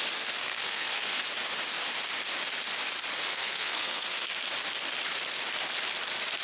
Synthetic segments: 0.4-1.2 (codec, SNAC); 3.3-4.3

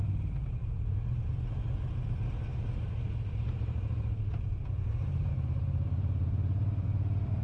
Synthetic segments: 0.0-7.4 (vocoder, BigVGAN v2)